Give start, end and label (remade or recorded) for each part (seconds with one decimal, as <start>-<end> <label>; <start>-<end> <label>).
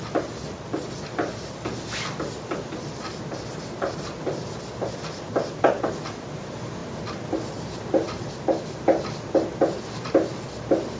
0.0-11.0 recorded